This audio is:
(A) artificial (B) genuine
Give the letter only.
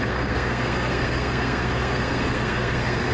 A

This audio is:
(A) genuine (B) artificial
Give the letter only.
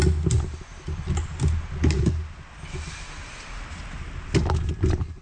A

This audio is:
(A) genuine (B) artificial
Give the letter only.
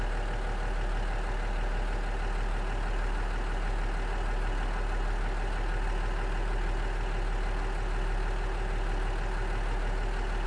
A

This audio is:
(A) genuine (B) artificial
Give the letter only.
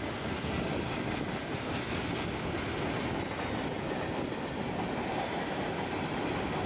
A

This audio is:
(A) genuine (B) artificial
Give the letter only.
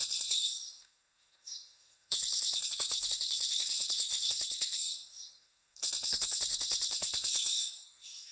B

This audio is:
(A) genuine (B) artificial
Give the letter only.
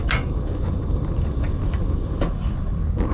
A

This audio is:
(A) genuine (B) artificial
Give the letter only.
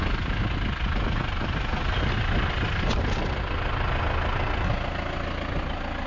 A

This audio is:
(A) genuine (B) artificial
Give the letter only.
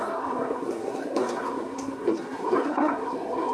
B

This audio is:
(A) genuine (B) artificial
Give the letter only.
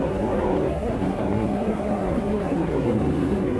B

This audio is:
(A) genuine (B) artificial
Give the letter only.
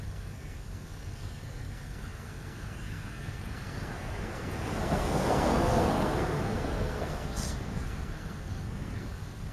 B